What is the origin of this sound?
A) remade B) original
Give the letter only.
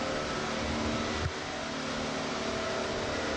B